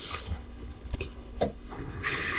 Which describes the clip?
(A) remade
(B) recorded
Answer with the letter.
A